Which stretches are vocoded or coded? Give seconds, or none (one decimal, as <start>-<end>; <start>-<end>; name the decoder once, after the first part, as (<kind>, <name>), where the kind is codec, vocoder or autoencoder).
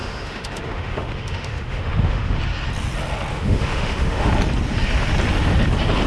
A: 0.0-2.4 (autoencoder, DAC-VAE); 3.3-4.3